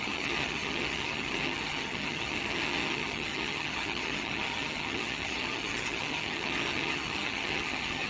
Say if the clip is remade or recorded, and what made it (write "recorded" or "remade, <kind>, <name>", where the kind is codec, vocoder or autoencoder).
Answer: remade, vocoder, HiFi-GAN